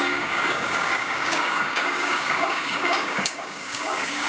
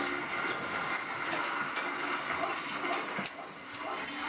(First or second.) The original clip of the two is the second